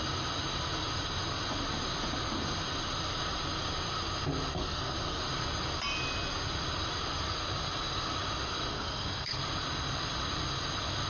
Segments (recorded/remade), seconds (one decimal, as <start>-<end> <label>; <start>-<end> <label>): 0.0-4.5 recorded; 4.5-5.2 remade; 5.2-8.7 recorded; 8.7-9.4 remade; 9.4-11.1 recorded